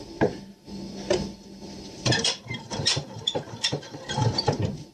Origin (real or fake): real